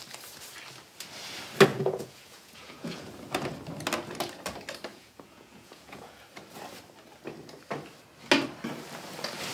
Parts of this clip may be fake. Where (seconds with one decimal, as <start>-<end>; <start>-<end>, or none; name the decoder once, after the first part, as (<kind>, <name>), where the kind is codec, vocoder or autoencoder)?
1.7-3.1 (vocoder, Vocos); 4.9-6.2